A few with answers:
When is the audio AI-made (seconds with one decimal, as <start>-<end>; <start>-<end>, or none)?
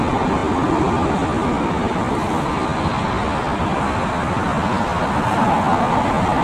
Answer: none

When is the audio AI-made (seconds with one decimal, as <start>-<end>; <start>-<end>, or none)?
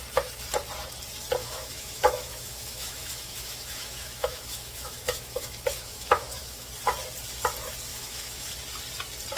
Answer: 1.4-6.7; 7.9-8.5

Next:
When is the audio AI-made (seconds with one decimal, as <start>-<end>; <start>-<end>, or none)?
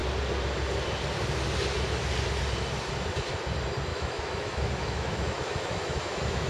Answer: 3.9-6.5